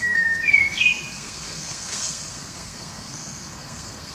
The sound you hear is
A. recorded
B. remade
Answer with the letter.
B